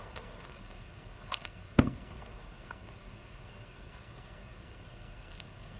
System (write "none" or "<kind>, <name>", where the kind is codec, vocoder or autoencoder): codec, SNAC